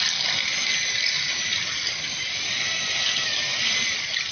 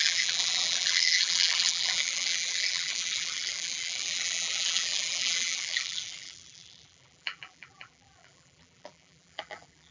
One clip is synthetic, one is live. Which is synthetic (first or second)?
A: second